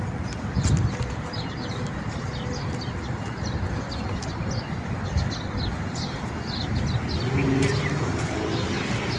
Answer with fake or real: real